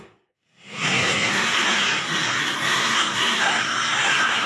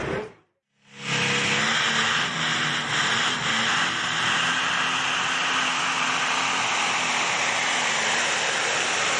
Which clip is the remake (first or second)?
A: first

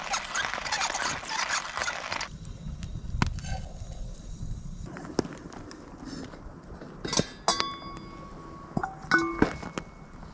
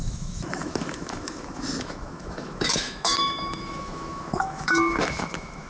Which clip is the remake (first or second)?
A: second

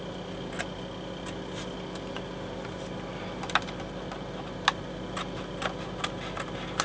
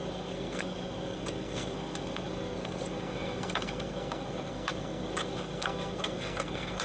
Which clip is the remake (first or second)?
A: second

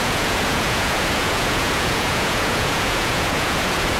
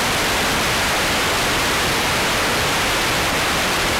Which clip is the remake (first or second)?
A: first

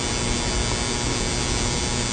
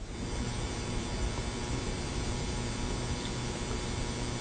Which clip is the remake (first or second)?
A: second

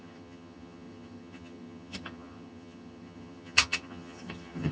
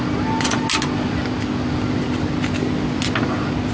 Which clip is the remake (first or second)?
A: first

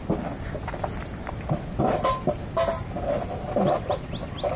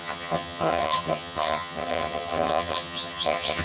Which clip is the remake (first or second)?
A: second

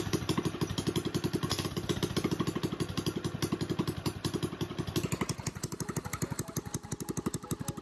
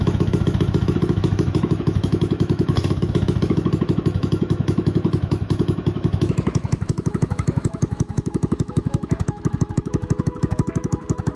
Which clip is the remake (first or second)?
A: second